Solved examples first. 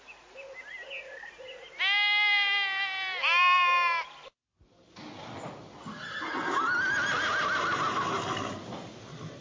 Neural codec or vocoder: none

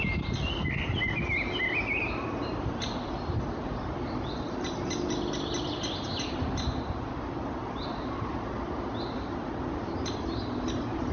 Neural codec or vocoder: none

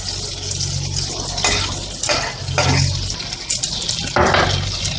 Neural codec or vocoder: none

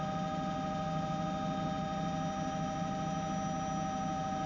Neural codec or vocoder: none